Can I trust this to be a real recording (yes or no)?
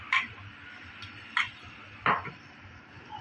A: yes